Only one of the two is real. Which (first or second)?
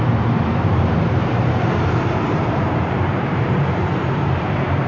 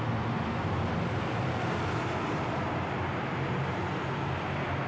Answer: second